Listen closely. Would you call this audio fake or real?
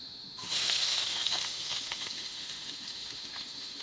fake